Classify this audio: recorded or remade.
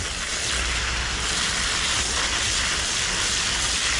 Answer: recorded